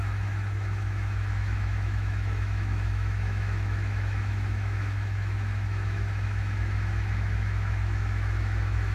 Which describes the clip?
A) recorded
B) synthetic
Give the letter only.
B